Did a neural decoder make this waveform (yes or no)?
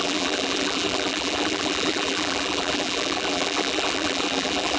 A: yes